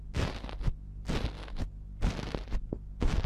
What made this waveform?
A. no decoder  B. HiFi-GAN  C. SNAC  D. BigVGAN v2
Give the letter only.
A